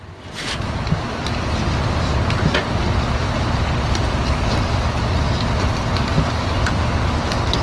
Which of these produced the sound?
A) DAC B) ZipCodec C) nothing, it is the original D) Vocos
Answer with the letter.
C